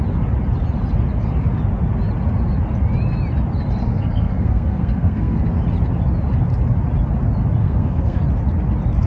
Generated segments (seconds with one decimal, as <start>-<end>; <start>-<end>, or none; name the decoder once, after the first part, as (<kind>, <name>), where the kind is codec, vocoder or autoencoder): 3.8-5.4 (codec, SNAC); 7.6-8.2